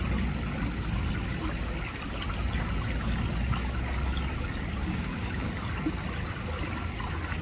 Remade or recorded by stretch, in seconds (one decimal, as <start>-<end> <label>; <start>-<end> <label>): 0.0-4.8 recorded; 4.8-5.5 remade; 5.5-7.4 recorded